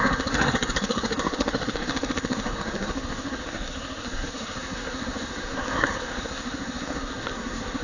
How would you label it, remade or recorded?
remade